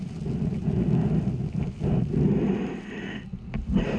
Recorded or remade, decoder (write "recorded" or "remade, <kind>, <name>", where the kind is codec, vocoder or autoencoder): recorded